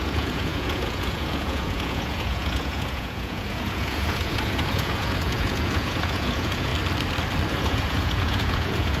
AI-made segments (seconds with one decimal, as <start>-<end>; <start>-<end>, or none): 0.0-6.7; 7.5-9.0